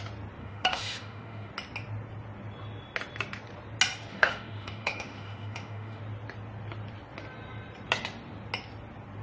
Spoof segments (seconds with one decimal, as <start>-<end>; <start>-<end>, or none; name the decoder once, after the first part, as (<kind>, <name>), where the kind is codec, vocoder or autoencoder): 0.4-1.5 (autoencoder, DAC-VAE); 4.1-6.0